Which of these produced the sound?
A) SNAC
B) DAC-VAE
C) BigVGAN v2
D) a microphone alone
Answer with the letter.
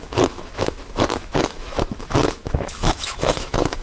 B